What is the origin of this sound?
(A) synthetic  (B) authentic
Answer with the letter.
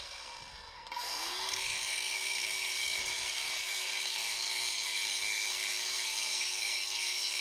A